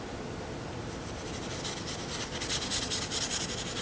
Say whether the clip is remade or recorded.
recorded